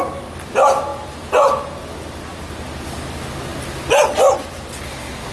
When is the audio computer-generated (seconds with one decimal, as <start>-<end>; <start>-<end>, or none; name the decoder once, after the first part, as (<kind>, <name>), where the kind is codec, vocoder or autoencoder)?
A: none